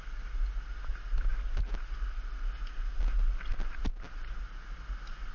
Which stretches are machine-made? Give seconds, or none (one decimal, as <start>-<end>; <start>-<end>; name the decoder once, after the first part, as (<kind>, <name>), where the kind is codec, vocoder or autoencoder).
none